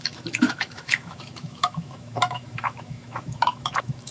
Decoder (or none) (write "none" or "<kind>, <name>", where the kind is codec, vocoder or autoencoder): autoencoder, DAC-VAE